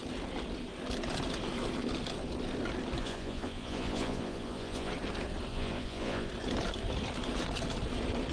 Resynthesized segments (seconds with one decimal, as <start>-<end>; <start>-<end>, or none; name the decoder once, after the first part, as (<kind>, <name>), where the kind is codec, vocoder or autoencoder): 3.0-4.9 (vocoder, Vocos); 5.5-6.3